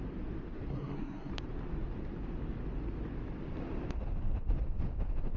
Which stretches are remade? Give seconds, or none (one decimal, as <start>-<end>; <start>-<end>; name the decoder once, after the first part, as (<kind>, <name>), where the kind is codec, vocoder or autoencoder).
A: 0.7-1.3 (codec, SNAC)